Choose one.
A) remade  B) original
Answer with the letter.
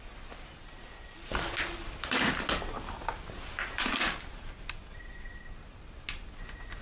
B